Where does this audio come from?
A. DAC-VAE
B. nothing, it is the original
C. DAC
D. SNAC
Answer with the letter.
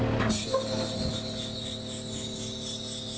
B